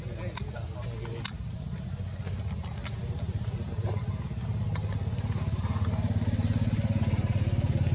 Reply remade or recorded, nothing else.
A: recorded